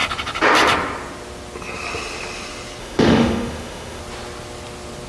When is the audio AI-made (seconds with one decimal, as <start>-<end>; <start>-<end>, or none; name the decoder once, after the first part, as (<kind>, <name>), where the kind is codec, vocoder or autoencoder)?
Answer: 2.8-4.0 (autoencoder, DAC-VAE)